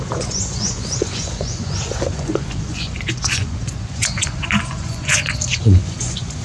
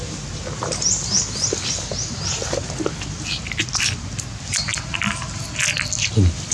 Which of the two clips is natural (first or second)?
second